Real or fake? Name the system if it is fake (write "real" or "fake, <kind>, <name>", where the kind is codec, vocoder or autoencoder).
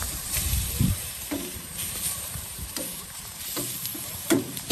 fake, vocoder, BigVGAN v2